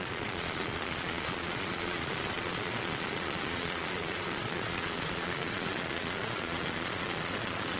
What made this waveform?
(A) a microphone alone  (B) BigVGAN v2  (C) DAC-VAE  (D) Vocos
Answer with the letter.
D